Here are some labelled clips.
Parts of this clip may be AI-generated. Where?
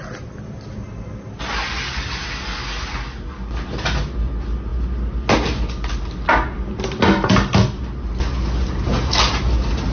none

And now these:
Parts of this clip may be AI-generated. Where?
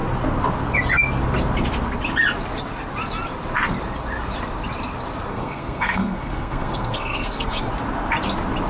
5.3-7.7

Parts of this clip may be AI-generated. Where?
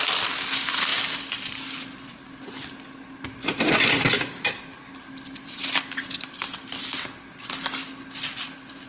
none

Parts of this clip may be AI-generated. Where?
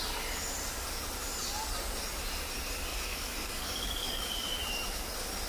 2.9-4.3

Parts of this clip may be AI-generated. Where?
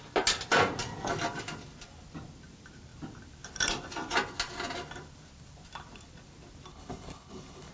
6.7-7.7